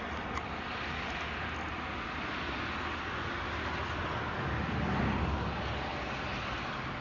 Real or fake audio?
real